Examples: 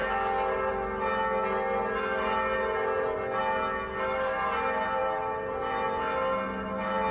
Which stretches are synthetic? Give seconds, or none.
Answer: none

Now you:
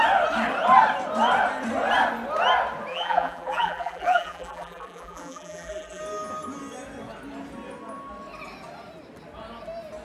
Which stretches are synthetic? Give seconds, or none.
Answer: 2.9-6.0

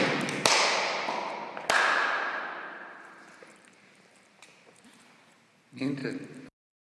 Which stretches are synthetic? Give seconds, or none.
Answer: 2.0-5.0; 6.0-6.8